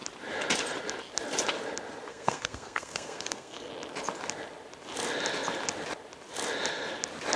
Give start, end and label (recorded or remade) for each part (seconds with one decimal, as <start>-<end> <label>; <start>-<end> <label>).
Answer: 0.0-2.1 recorded; 2.1-3.7 remade; 3.7-7.4 recorded